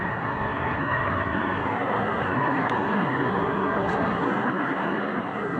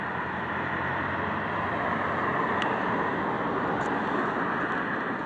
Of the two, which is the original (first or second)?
second